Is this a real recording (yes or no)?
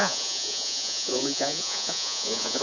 no